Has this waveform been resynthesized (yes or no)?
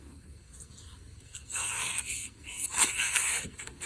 yes